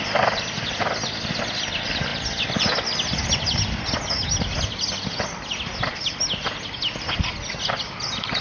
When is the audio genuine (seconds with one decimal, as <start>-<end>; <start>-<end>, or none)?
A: 0.0-8.4